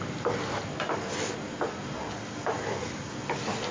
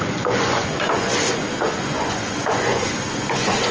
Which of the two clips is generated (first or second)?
second